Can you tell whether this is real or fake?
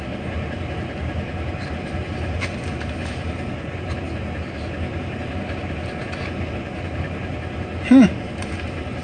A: real